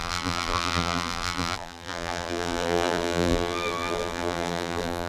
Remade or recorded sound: remade